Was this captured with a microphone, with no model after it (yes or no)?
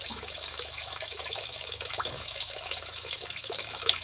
no